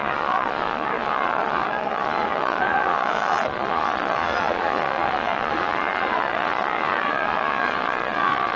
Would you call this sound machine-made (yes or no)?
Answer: yes